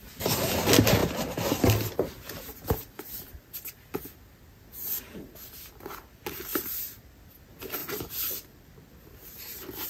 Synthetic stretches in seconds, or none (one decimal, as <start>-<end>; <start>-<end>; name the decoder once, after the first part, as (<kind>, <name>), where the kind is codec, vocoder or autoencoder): none